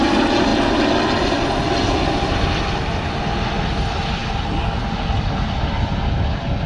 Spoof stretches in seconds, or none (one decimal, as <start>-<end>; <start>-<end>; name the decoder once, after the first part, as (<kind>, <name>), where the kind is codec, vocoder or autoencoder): none

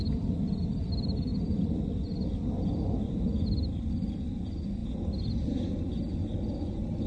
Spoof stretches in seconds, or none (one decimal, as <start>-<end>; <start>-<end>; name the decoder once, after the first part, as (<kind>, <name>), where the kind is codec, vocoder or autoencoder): none

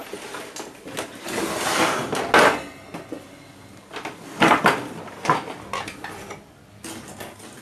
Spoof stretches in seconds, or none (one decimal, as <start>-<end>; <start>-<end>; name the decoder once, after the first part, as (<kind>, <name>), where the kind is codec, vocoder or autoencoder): none

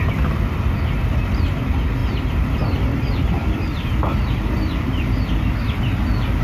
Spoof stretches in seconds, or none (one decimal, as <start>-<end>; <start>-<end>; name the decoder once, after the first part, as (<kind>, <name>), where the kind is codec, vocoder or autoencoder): 2.0-5.8 (vocoder, BigVGAN v2)

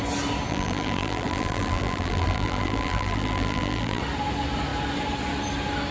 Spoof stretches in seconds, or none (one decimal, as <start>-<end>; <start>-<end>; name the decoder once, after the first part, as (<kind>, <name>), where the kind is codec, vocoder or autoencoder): 0.5-4.0 (vocoder, BigVGAN v2)

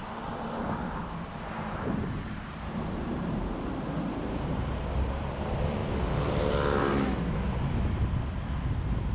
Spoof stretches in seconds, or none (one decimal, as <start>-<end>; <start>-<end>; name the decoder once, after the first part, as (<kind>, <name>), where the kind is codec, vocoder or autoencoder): 1.6-5.2 (vocoder, BigVGAN v2)

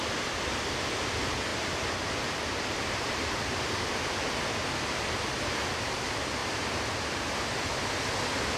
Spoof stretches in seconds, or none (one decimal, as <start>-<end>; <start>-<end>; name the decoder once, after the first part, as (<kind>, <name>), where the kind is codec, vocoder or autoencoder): 1.5-3.9 (vocoder, BigVGAN v2)

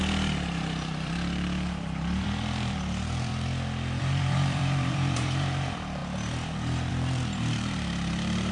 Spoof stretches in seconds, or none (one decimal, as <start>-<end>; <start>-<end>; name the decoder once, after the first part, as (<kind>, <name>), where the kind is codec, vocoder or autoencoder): 0.0-3.3 (vocoder, BigVGAN v2); 4.0-6.0; 6.9-8.5